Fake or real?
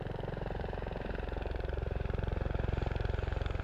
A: fake